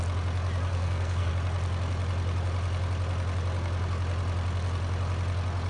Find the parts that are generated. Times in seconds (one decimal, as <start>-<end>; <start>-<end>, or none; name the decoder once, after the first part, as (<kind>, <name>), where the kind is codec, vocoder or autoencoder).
0.7-1.3 (codec, SNAC)